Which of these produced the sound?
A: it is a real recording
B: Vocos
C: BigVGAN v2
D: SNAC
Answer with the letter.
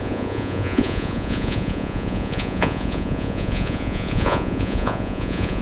B